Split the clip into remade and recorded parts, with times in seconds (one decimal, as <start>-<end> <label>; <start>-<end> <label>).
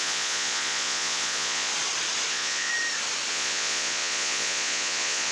0.0-1.7 remade; 1.7-2.3 recorded; 2.3-2.7 remade; 2.7-3.3 recorded; 3.3-5.3 remade